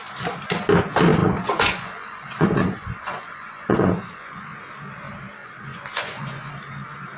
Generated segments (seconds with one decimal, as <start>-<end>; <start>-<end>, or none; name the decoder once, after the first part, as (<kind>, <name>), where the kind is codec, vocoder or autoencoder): 1.2-4.4 (vocoder, Vocos); 5.4-6.5